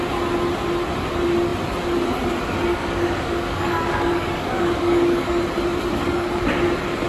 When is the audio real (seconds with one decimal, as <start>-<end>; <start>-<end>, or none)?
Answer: 0.0-2.7; 5.4-5.9; 6.4-7.1